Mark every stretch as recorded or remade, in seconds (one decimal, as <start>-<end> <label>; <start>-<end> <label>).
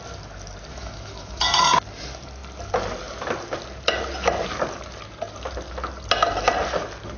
0.0-0.7 recorded; 0.7-1.4 remade; 1.4-7.2 recorded